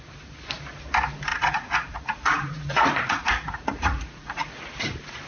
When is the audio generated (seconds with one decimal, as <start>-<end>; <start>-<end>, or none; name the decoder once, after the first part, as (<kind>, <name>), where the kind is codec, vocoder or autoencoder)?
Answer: 1.3-4.5 (vocoder, Vocos)